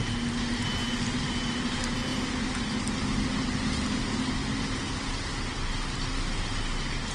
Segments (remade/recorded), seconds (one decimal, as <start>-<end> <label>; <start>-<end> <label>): 0.0-7.1 recorded